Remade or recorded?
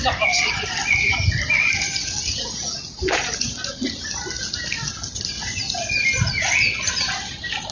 recorded